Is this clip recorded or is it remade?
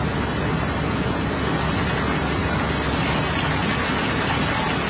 recorded